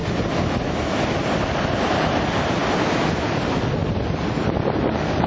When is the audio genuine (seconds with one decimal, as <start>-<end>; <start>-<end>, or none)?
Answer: 0.0-5.3